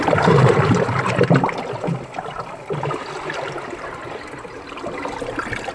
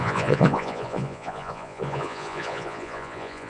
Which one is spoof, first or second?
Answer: second